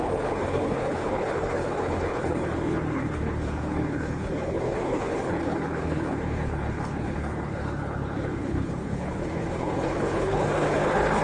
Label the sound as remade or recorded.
remade